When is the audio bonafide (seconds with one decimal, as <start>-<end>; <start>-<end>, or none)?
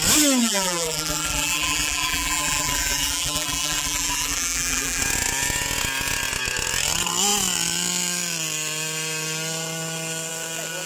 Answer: 0.0-0.4; 5.0-10.9